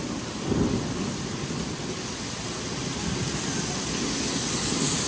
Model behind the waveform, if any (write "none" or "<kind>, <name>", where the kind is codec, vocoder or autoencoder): none